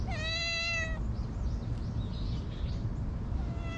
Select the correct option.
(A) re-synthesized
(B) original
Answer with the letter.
B